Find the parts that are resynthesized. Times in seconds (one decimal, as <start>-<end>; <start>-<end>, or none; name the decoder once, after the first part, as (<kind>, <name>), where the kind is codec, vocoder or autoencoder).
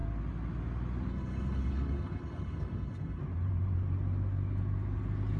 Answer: 1.1-3.2 (codec, HILCodec)